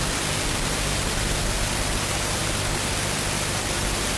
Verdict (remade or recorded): recorded